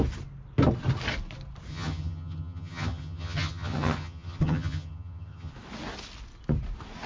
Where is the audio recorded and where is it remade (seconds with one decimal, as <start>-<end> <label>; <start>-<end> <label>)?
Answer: 0.0-1.7 recorded; 1.7-5.5 remade; 5.5-7.1 recorded